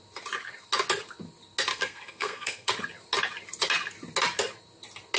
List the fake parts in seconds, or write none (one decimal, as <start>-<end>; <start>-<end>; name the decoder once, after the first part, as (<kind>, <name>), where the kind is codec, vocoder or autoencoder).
1.7-2.7 (codec, SNAC)